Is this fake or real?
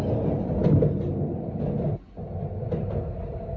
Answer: real